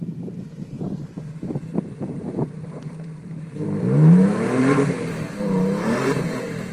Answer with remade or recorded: remade